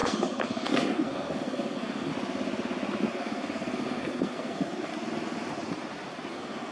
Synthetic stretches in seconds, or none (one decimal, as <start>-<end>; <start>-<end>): 0.0-2.1; 3.1-4.9; 6.3-6.7